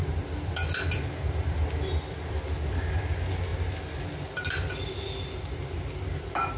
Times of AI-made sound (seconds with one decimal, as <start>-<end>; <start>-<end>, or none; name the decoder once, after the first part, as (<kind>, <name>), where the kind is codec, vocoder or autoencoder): 0.0-2.7 (vocoder, BigVGAN v2)